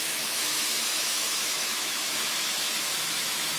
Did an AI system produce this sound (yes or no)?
yes